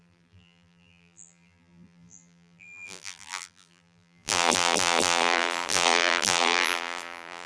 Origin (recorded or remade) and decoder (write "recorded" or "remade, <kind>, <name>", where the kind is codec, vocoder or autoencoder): remade, vocoder, BigVGAN v2